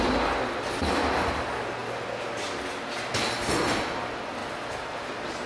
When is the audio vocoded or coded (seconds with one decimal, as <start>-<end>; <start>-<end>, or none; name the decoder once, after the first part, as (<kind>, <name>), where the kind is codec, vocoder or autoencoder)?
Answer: none